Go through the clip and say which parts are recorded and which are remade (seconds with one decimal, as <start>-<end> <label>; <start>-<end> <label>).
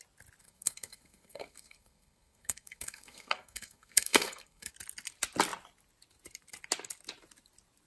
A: 0.0-0.4 recorded; 0.4-4.7 remade; 4.7-7.9 recorded